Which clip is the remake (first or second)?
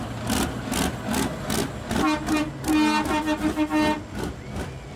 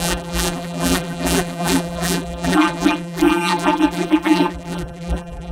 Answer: second